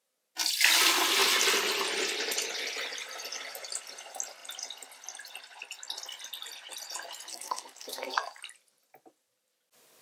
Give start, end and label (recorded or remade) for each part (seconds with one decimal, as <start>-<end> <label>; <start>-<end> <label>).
0.0-7.3 recorded; 7.3-8.4 remade; 8.4-10.0 recorded